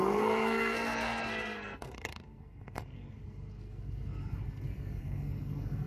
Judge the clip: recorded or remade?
remade